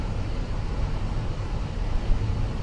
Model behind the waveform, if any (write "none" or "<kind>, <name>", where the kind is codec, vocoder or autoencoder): vocoder, BigVGAN v2